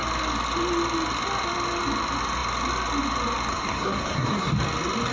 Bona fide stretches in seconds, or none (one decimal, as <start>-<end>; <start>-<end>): 0.0-3.5; 4.5-5.1